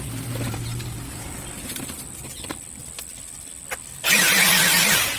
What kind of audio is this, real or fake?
real